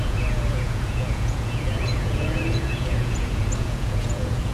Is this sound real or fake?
fake